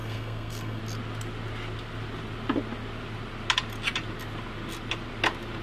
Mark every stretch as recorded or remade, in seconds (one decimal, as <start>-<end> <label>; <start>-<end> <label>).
0.0-0.8 remade; 0.8-5.6 recorded